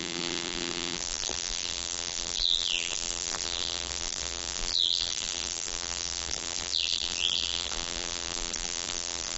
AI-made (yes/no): yes